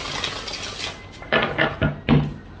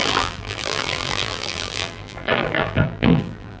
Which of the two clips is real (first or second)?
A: first